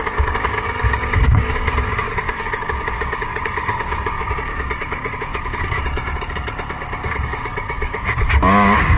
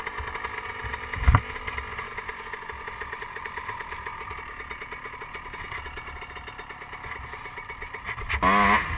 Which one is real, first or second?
second